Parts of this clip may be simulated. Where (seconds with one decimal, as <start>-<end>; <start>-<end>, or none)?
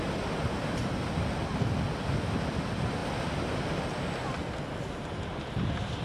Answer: none